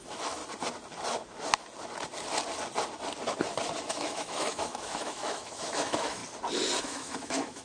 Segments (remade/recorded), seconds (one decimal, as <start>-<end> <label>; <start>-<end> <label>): 0.0-0.4 remade; 0.4-3.9 recorded; 3.9-6.2 remade; 6.2-6.8 recorded; 6.8-7.6 remade